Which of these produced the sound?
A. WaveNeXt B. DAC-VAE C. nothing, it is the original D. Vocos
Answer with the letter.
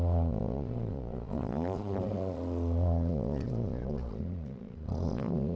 D